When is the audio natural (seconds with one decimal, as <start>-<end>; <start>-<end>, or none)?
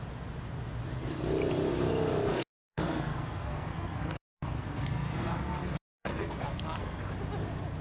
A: 0.0-2.3; 7.0-7.8